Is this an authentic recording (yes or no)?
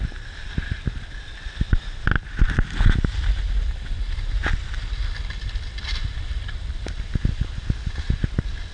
yes